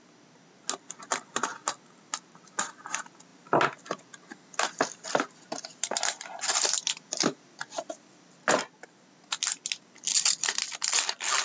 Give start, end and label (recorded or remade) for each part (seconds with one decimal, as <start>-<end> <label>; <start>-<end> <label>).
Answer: 0.0-5.7 recorded; 5.7-8.7 remade; 8.7-11.4 recorded